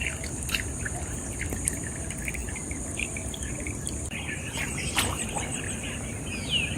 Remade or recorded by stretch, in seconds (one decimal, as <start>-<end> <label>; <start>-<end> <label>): 0.0-2.4 recorded; 2.4-3.5 remade; 3.5-6.8 recorded